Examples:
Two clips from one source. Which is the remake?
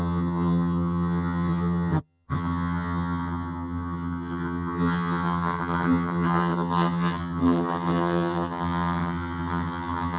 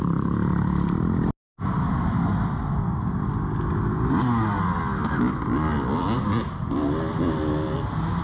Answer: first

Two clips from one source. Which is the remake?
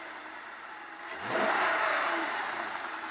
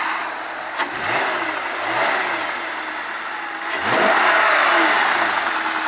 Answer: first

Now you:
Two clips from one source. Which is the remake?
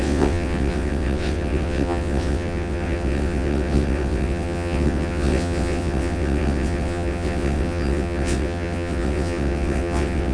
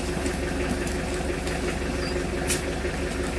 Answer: first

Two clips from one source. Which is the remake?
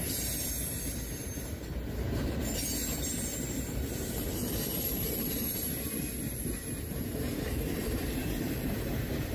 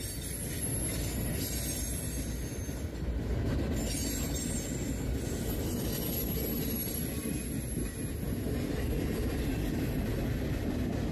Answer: first